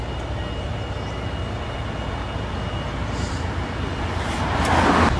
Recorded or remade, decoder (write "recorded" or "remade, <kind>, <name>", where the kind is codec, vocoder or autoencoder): recorded